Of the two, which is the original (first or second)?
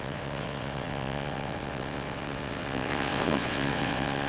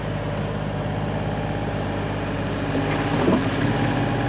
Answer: second